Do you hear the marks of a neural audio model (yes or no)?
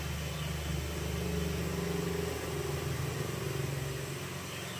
no